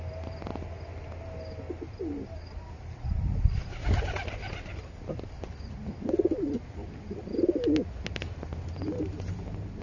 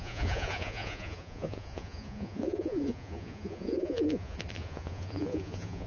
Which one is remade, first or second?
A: second